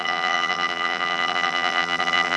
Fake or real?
fake